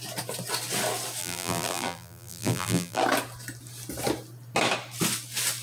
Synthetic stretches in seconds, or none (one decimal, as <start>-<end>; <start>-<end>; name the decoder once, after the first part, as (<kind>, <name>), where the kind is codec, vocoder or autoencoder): 1.2-3.0 (vocoder, BigVGAN v2)